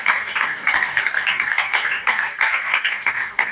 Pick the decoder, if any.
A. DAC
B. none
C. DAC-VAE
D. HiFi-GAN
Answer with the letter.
A